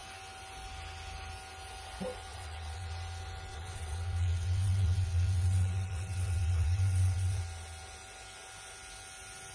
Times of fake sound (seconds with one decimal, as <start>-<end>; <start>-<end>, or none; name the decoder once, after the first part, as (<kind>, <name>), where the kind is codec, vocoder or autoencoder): 2.3-2.9 (vocoder, WaveNeXt); 3.5-7.4